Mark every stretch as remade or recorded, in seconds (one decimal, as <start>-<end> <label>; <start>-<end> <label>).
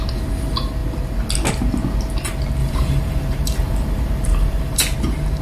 0.0-2.6 recorded; 2.6-4.8 remade; 4.8-5.4 recorded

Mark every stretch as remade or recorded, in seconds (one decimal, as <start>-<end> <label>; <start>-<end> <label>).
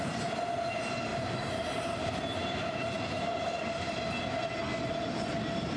0.0-1.1 recorded; 1.1-4.2 remade; 4.2-5.8 recorded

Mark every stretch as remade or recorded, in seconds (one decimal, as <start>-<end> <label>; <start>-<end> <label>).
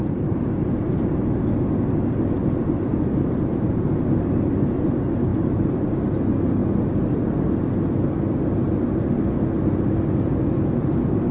0.0-2.4 recorded; 2.4-3.9 remade; 3.9-5.3 recorded; 5.3-6.0 remade; 6.0-11.3 recorded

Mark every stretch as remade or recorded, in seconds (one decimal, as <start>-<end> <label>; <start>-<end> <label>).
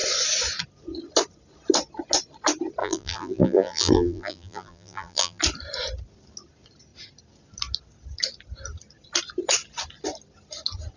0.0-2.8 recorded; 2.8-5.4 remade; 5.4-11.0 recorded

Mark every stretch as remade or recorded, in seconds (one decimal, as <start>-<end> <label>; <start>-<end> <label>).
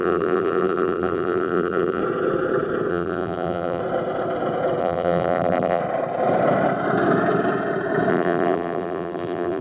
0.0-2.0 remade; 2.0-2.9 recorded; 2.9-3.8 remade; 3.8-4.8 recorded; 4.8-5.8 remade; 5.8-8.1 recorded; 8.1-9.6 remade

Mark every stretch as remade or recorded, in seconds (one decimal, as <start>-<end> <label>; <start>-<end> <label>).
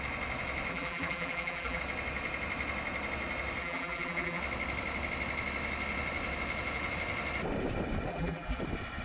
0.0-0.7 recorded; 0.7-1.8 remade; 1.8-3.6 recorded; 3.6-4.4 remade; 4.4-8.1 recorded; 8.1-8.6 remade; 8.6-9.0 recorded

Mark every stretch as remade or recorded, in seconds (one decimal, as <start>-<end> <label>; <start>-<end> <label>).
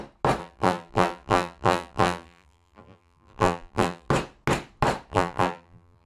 0.0-0.4 recorded; 0.4-4.1 remade; 4.1-5.1 recorded; 5.1-6.1 remade